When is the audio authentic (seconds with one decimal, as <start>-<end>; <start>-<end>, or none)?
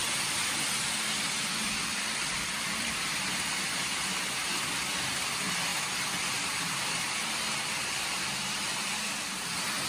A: 3.0-5.7; 7.3-9.9